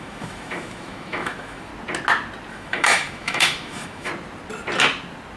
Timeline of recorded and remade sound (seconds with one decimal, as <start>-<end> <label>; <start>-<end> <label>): 0.0-1.7 remade; 1.7-2.5 recorded; 2.5-4.1 remade; 4.1-5.4 recorded